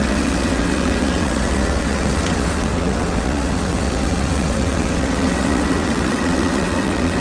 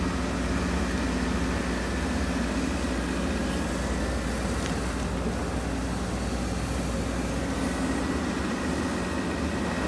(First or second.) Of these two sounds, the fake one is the first